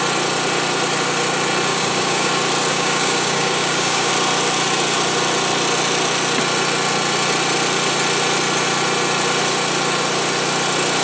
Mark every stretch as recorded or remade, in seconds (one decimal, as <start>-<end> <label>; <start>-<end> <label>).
0.0-1.7 recorded; 1.7-2.3 remade; 2.3-2.7 recorded; 2.7-4.1 remade; 4.1-11.0 recorded